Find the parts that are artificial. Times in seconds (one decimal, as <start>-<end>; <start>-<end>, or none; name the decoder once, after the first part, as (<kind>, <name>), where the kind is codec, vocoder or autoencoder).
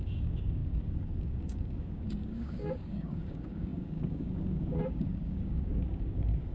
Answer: 0.0-6.5 (codec, DAC)